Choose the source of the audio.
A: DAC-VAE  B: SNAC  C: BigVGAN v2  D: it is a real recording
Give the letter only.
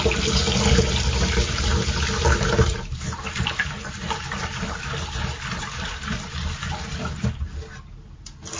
D